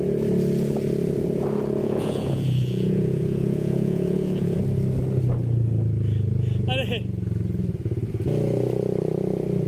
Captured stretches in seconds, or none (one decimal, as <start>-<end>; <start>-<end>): 0.0-1.8; 4.6-9.7